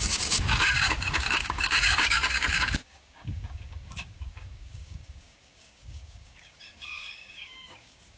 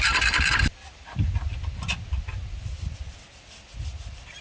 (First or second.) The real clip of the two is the second